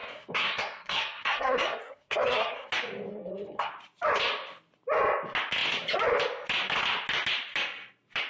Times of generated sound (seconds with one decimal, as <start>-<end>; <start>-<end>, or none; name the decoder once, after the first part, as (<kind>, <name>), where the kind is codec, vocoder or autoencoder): 0.0-2.7 (codec, SNAC); 3.1-3.7